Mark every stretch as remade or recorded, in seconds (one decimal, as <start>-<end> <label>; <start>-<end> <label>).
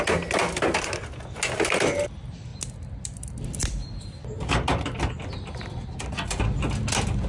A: 0.0-7.3 recorded